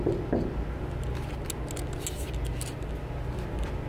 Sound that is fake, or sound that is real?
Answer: real